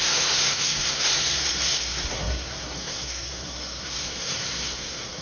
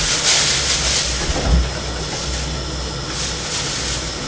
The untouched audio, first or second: second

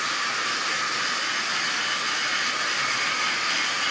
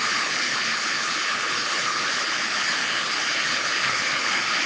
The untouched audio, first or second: first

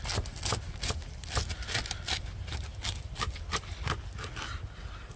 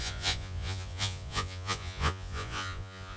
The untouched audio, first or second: first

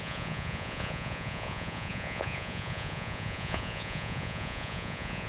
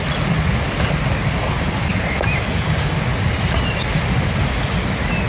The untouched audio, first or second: second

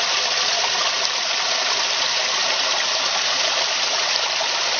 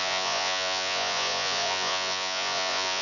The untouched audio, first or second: first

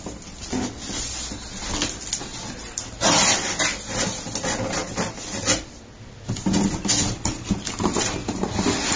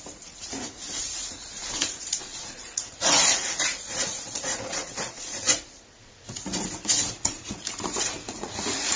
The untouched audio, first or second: first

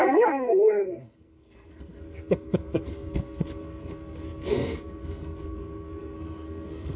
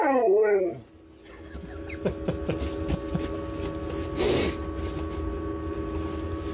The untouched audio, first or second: second